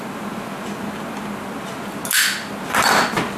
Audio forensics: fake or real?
real